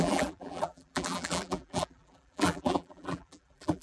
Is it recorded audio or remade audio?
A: remade